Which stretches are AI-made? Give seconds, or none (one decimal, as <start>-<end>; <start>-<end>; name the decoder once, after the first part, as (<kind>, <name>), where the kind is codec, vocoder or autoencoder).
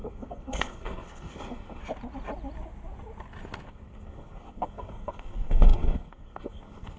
0.0-1.8 (codec, SNAC); 3.7-7.0